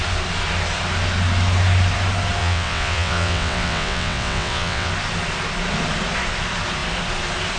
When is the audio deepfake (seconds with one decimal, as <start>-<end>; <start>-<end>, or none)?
2.4-4.9